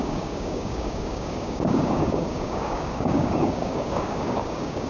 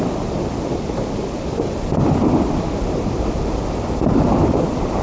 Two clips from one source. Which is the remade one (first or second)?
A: first